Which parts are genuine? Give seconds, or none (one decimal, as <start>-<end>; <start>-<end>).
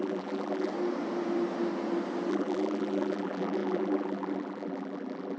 0.7-2.3